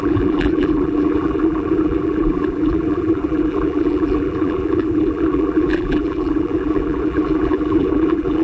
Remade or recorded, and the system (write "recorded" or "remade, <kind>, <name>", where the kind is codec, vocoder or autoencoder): remade, vocoder, BigVGAN v2